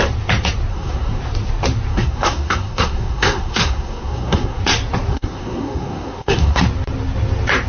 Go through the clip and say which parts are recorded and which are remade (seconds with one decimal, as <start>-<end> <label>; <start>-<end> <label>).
0.0-0.7 recorded; 0.7-1.2 remade; 1.2-1.9 recorded; 1.9-4.6 remade; 4.6-5.1 recorded; 5.1-6.6 remade; 6.6-7.7 recorded